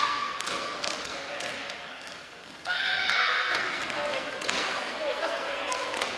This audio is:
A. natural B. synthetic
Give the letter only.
B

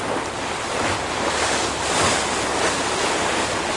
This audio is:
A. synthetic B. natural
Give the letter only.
B